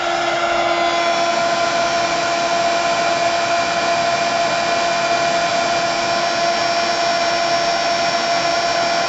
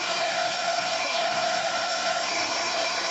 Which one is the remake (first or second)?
second